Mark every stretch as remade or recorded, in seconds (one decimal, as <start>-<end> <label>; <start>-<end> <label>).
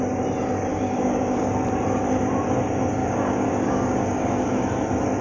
0.0-0.7 recorded; 0.7-1.5 remade; 1.5-3.0 recorded; 3.0-4.7 remade; 4.7-5.2 recorded